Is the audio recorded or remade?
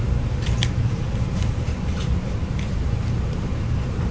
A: remade